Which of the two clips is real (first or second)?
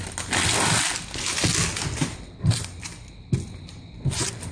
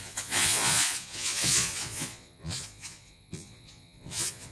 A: first